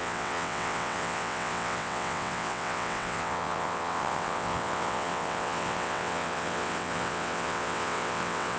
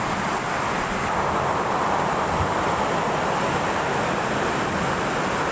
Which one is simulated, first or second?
first